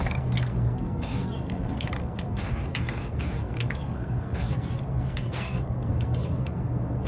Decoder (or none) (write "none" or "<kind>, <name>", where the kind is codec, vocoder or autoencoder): codec, SNAC